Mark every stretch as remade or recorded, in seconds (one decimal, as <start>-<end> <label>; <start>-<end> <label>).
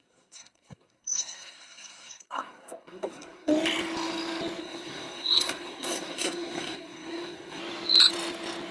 0.0-3.5 remade; 3.5-4.6 recorded; 4.6-7.6 remade; 7.6-8.7 recorded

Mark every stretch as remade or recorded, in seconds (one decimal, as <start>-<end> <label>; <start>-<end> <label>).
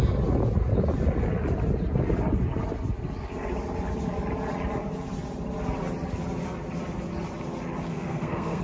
0.0-7.9 recorded; 7.9-8.6 remade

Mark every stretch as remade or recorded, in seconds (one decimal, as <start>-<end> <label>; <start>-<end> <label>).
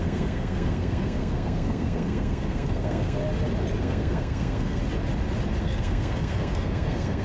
0.0-3.2 remade; 3.2-3.8 recorded; 3.8-4.8 remade; 4.8-5.6 recorded; 5.6-7.2 remade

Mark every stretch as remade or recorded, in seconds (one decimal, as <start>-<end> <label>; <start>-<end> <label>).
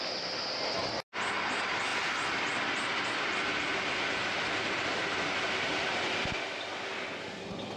0.0-7.8 recorded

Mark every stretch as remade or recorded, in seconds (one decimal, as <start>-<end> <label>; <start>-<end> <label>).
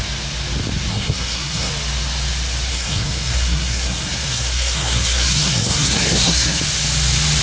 0.0-0.9 recorded; 0.9-1.7 remade; 1.7-2.7 recorded; 2.7-6.6 remade; 6.6-7.4 recorded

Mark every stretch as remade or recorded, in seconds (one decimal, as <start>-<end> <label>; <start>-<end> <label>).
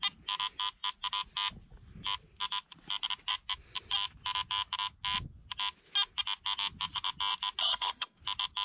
0.0-7.6 recorded; 7.6-8.2 remade; 8.2-8.6 recorded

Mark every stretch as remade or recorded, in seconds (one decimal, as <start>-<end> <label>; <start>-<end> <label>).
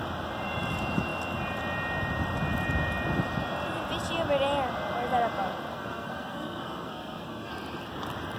0.0-5.7 recorded; 5.7-7.5 remade; 7.5-8.4 recorded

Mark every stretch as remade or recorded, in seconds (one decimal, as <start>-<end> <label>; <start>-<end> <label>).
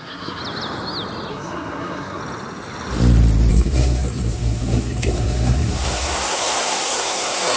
0.0-0.4 remade; 0.4-1.3 recorded; 1.3-2.2 remade; 2.2-3.5 recorded; 3.5-7.6 remade